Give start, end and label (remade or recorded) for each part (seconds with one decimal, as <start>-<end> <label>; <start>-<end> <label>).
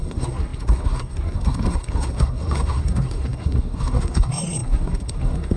0.0-5.6 remade